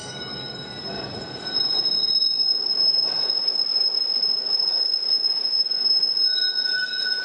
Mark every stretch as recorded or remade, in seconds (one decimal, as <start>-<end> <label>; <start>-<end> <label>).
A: 0.0-0.5 remade; 0.5-7.2 recorded